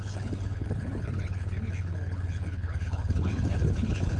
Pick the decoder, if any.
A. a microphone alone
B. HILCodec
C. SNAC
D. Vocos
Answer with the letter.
B